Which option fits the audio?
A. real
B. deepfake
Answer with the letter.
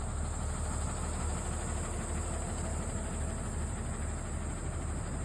A